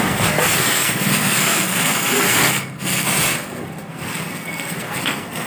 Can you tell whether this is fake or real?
fake